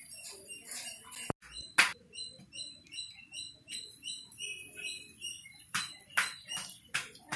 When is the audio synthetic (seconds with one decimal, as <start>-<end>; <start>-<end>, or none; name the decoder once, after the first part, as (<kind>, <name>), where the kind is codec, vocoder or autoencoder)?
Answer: none